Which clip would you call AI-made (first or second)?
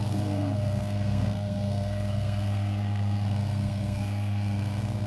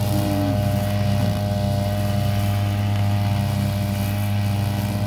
first